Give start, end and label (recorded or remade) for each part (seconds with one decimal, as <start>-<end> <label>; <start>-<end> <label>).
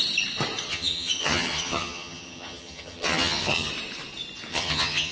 0.0-0.7 recorded; 0.7-3.7 remade; 3.7-4.5 recorded; 4.5-5.1 remade